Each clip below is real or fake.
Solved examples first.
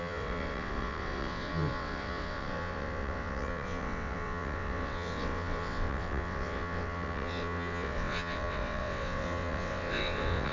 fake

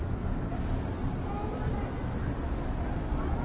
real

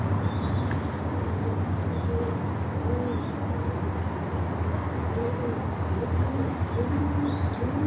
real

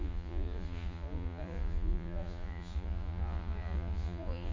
fake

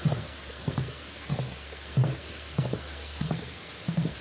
fake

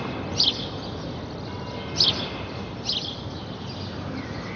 real